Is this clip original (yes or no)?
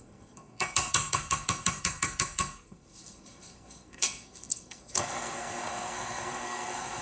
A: no